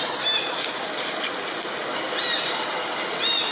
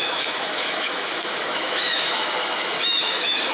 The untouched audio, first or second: first